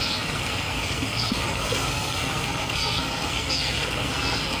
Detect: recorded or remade remade